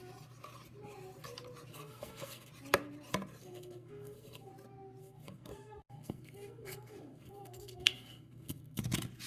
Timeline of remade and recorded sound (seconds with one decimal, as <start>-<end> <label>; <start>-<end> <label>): 0.0-1.7 recorded; 1.7-2.5 remade; 2.5-3.4 recorded; 3.4-4.5 remade; 4.5-5.0 recorded; 5.0-8.8 remade; 8.8-9.3 recorded